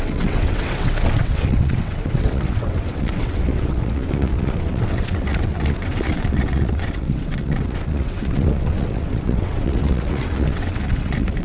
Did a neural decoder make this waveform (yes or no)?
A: yes